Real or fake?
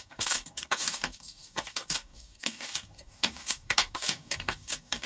fake